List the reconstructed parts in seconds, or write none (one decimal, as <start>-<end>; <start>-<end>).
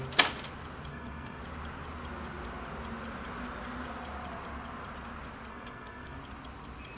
0.9-1.4; 5.5-6.2